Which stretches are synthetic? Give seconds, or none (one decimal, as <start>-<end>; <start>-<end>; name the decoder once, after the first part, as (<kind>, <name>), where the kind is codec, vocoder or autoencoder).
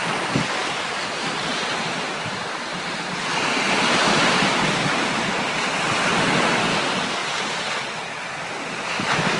none